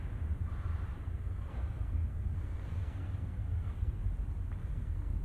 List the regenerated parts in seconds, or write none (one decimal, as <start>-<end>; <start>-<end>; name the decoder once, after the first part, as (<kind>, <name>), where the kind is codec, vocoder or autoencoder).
0.9-4.0 (codec, SNAC); 4.6-5.2